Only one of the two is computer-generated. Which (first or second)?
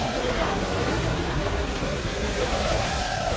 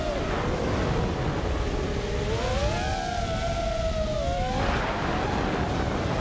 first